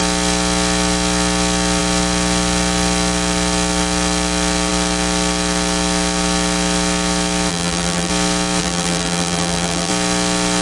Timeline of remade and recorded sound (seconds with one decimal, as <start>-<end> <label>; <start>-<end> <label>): 0.0-7.5 recorded; 7.5-8.1 remade; 8.1-8.6 recorded; 8.6-9.9 remade; 9.9-10.6 recorded